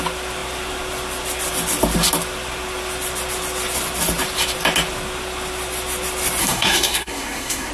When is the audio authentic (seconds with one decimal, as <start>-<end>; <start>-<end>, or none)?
0.0-6.4